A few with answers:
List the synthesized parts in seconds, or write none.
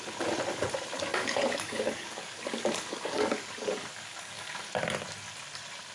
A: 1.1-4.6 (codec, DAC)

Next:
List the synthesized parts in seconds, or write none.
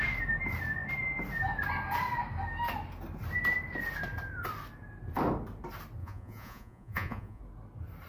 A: 6.0-7.4 (vocoder, Vocos)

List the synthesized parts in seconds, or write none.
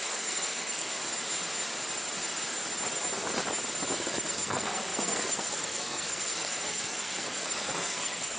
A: 0.0-1.0 (codec, SNAC); 4.0-8.4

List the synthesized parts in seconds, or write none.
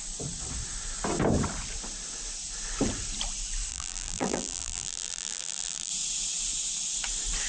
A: 3.7-5.9 (vocoder, BigVGAN v2)